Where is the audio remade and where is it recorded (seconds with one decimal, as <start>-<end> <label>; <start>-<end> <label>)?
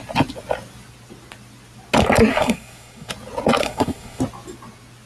0.0-2.3 recorded; 2.3-3.1 remade; 3.1-3.6 recorded; 3.6-4.2 remade; 4.2-5.1 recorded